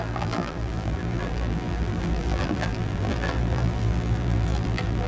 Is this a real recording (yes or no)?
no